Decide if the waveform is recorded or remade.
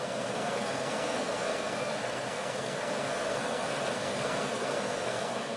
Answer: remade